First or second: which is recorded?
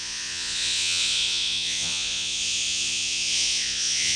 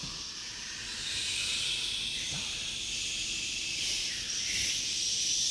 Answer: second